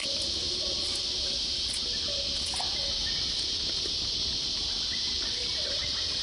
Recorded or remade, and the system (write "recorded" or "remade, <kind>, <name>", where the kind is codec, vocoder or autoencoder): recorded